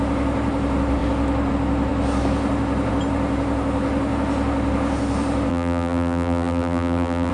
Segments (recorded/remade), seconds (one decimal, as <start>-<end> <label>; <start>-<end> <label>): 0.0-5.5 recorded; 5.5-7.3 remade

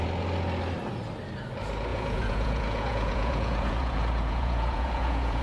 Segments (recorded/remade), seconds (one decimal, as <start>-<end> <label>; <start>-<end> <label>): 0.0-1.9 recorded; 1.9-5.4 remade

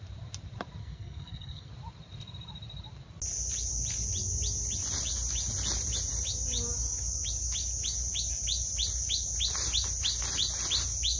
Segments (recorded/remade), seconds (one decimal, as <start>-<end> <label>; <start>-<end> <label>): 0.0-0.8 recorded; 0.8-1.7 remade; 1.7-11.2 recorded

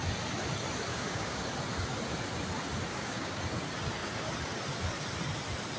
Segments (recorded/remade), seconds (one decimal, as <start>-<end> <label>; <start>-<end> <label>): 0.0-0.9 recorded; 0.9-1.4 remade; 1.4-2.9 recorded; 2.9-3.4 remade; 3.4-5.8 recorded